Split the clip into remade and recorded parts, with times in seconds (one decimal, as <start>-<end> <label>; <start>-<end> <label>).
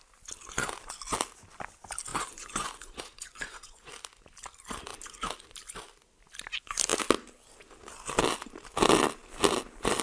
0.0-2.1 recorded; 2.1-3.9 remade; 3.9-10.0 recorded